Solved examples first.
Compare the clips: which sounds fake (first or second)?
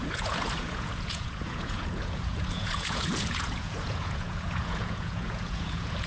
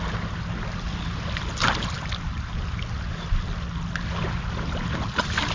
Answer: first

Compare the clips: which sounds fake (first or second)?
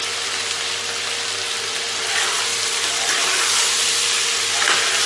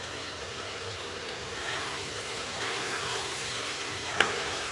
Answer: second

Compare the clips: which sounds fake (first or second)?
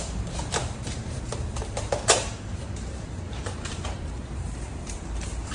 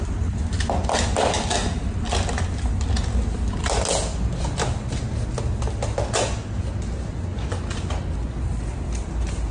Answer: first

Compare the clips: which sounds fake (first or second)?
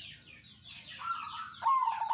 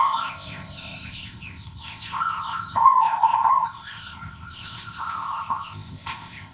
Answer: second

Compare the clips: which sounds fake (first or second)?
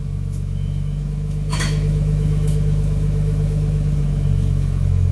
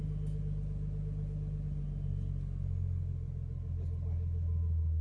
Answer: first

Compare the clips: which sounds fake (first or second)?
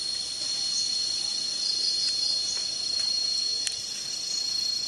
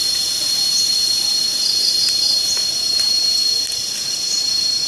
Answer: second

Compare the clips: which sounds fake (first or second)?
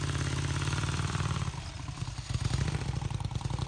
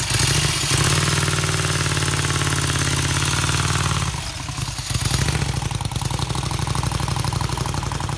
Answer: first